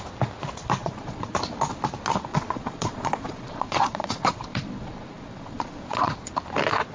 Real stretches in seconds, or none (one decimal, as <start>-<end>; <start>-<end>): 0.0-0.8; 1.3-2.3; 6.3-6.9